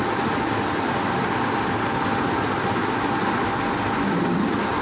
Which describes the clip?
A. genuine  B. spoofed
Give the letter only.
A